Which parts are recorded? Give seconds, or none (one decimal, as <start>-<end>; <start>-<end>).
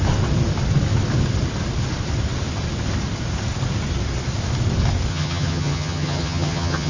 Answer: 0.0-5.1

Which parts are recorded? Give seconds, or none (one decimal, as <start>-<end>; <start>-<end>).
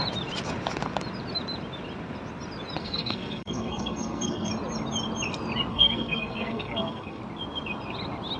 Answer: 0.0-2.8; 4.5-5.7; 7.2-8.4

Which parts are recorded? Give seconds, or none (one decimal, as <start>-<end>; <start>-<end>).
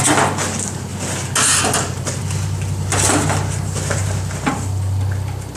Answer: 0.0-5.6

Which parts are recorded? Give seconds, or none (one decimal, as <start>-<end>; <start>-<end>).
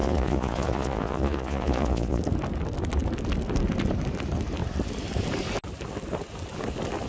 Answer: 2.2-7.1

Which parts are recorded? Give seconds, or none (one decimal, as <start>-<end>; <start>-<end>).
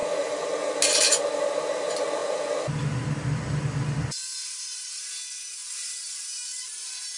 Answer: 0.0-7.2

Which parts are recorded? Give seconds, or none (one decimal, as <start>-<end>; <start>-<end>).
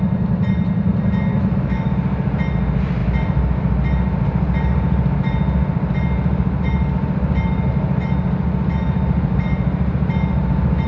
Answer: 0.0-1.3; 1.9-10.9